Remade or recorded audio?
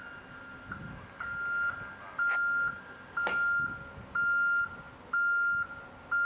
recorded